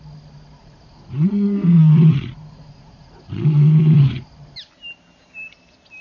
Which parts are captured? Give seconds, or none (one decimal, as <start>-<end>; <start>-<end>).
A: 0.0-0.6; 4.2-6.0